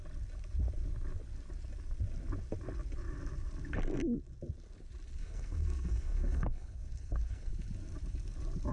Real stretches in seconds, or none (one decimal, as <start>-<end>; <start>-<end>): 0.0-5.2; 7.5-8.7